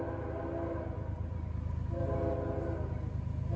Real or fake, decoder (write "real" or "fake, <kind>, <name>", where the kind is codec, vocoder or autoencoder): real